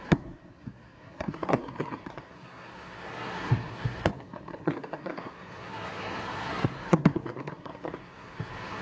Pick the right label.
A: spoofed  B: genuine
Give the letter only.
A